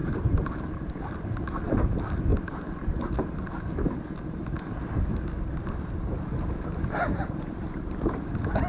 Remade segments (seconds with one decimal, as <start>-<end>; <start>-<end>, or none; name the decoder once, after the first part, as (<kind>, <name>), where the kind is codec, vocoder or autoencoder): 0.0-0.7 (vocoder, BigVGAN v2)